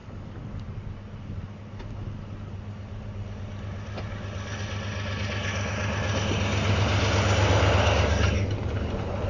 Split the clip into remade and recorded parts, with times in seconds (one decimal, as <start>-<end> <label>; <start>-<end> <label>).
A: 0.0-9.3 recorded